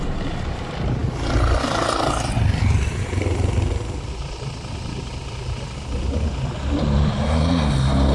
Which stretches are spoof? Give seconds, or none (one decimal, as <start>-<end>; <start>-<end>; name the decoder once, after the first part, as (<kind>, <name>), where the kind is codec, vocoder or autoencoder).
none